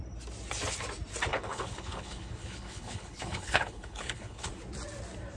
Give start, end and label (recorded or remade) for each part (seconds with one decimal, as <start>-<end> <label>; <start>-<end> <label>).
0.0-1.3 recorded; 1.3-4.5 remade; 4.5-5.4 recorded